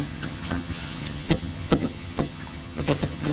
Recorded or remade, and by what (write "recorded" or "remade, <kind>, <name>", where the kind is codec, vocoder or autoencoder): remade, vocoder, HiFi-GAN